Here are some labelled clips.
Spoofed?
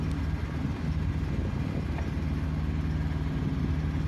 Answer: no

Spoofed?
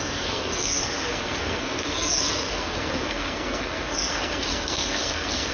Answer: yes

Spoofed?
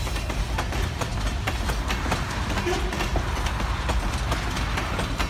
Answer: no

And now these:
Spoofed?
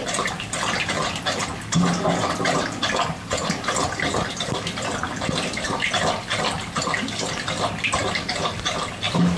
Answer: no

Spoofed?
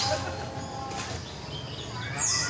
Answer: no